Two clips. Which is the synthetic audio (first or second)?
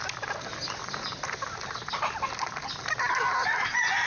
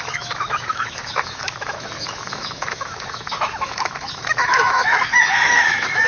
second